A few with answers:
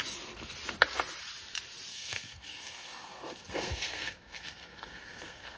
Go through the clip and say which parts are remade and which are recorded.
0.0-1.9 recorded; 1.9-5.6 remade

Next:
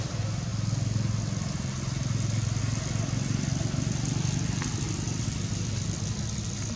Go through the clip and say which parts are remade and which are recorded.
0.0-6.8 recorded